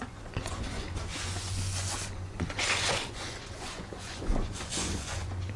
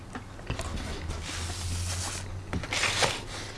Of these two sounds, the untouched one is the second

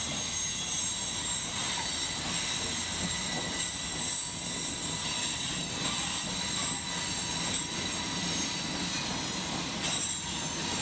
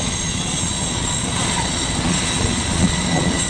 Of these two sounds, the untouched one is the first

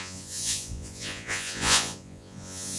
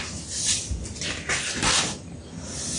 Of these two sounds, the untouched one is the second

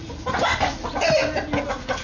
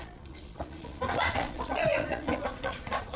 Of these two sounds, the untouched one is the first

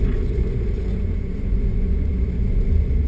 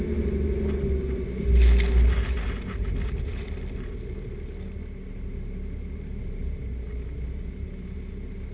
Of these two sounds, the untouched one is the second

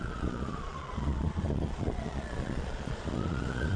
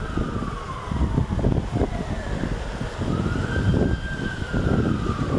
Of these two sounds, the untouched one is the second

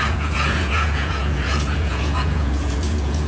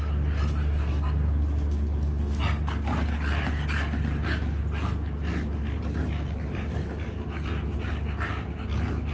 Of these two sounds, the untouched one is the second